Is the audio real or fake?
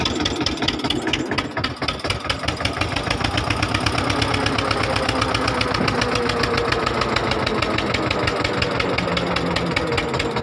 real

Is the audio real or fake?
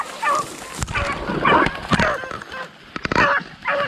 real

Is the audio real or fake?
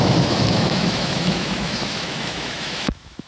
fake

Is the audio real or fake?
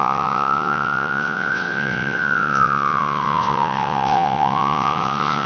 fake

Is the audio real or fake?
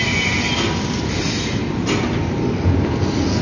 real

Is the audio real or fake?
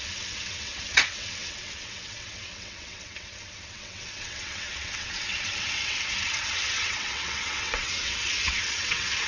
fake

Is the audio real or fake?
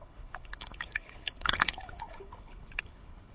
fake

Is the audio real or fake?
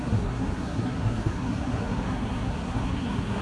fake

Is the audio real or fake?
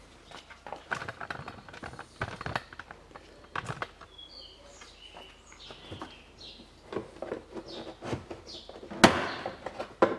real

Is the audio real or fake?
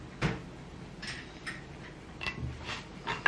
real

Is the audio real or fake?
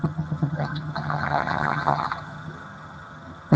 fake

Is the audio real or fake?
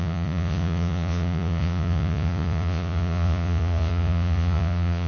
fake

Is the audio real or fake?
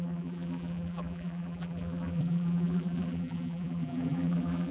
fake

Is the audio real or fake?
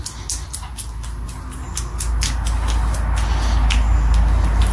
real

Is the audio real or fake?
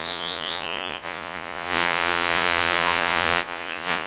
fake